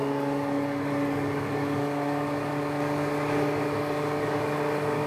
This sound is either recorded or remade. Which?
remade